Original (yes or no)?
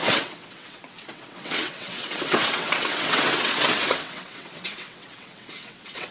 no